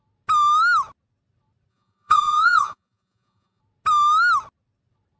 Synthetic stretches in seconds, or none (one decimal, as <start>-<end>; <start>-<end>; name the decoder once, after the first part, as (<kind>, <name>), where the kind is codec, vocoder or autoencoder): 1.7-3.6 (vocoder, Vocos)